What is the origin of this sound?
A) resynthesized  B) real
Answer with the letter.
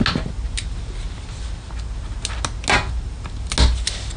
B